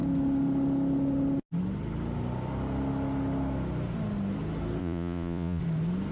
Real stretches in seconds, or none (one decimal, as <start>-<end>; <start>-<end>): 0.0-4.8; 5.6-6.1